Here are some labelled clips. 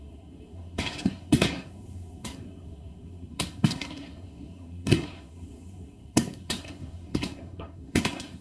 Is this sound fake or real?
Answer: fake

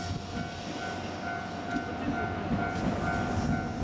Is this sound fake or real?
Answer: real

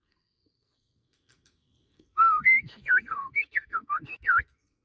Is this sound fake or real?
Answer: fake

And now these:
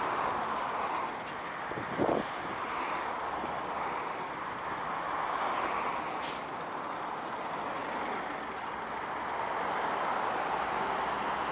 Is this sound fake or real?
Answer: real